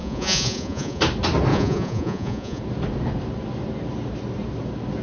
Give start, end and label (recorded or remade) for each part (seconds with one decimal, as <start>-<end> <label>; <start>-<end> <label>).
0.0-1.0 remade; 1.0-1.5 recorded; 1.5-2.6 remade; 2.6-5.0 recorded